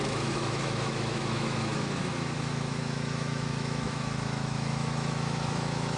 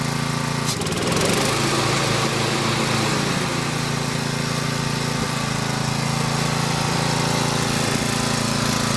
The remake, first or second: first